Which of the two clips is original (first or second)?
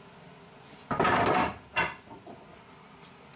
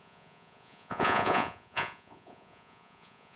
first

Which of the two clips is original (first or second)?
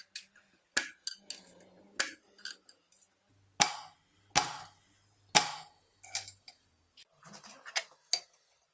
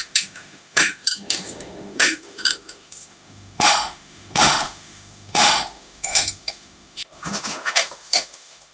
first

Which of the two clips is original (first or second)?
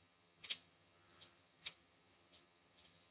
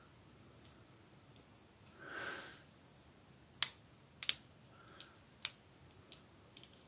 second